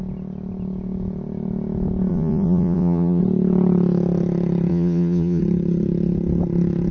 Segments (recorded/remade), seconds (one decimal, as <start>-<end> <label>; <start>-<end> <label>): 0.0-2.1 recorded; 2.1-3.2 remade; 3.2-4.7 recorded; 4.7-5.4 remade; 5.4-6.9 recorded